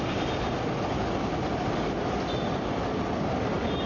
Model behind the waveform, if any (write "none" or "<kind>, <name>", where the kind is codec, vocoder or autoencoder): none